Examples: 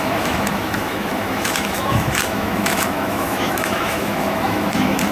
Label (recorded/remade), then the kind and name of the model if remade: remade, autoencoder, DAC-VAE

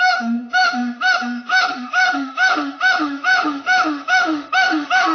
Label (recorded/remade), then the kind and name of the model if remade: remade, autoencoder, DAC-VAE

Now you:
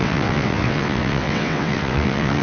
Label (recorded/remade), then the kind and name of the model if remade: remade, vocoder, WaveNeXt